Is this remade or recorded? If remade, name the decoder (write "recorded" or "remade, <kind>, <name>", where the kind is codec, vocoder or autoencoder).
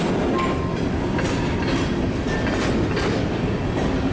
recorded